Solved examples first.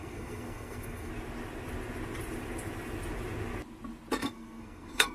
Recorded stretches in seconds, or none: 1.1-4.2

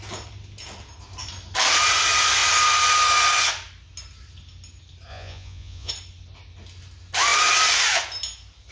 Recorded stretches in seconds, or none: 0.0-5.1; 5.9-8.7

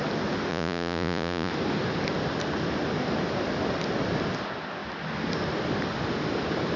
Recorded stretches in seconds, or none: 0.0-0.5; 1.5-6.8

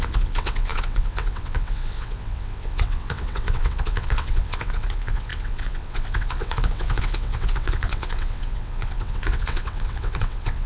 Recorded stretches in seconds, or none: none

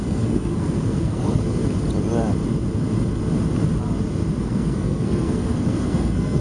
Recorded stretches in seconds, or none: 1.6-4.4

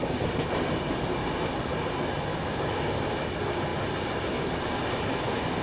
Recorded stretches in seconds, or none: 0.0-2.3; 3.0-5.6

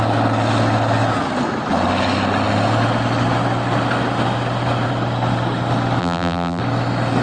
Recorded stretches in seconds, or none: 0.0-6.0; 6.6-7.2

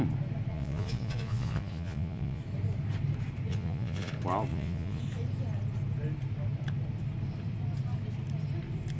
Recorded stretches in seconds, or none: 0.0-0.5; 2.4-3.5; 4.1-4.5; 5.0-9.0